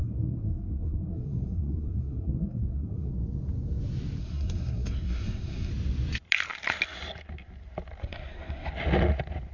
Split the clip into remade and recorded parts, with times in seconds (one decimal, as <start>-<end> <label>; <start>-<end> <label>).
0.0-3.1 remade; 3.1-4.2 recorded; 4.2-5.7 remade; 5.7-8.0 recorded; 8.0-8.7 remade; 8.7-9.5 recorded